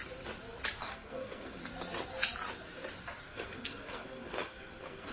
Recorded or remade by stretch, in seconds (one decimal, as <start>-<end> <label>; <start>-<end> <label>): 0.0-0.8 recorded; 0.8-1.6 remade; 1.6-3.3 recorded; 3.3-5.1 remade